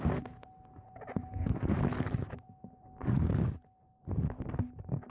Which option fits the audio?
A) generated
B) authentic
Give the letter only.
B